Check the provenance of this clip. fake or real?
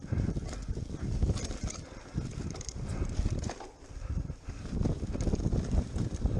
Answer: real